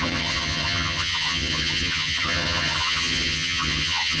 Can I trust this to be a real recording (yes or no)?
no